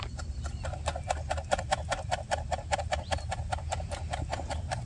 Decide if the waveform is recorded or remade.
recorded